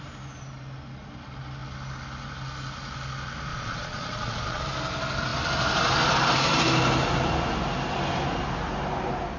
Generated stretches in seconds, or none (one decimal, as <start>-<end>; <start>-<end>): 3.5-4.6